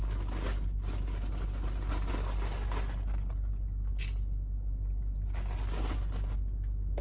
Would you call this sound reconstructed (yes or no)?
no